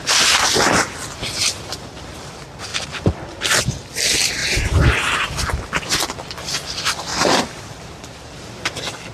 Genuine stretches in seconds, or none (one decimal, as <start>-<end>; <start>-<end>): 0.0-2.7; 3.6-4.4; 5.3-7.1; 8.5-9.1